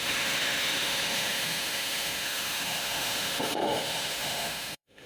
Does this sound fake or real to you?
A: fake